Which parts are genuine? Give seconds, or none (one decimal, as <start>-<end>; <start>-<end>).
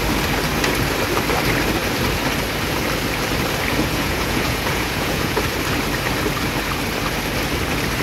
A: 0.0-3.7; 5.4-8.0